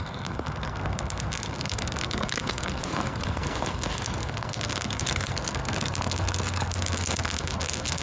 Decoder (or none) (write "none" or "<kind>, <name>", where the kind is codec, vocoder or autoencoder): codec, SNAC